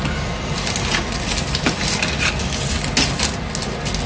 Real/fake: real